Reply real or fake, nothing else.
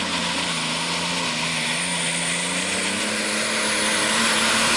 real